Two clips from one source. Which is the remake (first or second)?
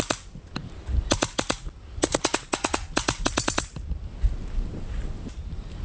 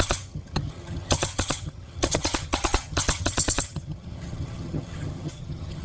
second